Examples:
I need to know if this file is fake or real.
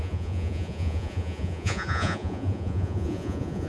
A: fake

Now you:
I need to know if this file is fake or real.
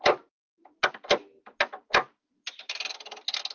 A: real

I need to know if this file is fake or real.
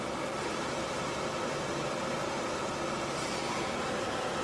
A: real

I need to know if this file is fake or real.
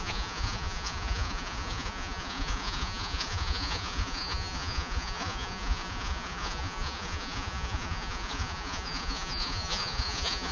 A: fake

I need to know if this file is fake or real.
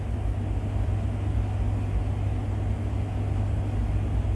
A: real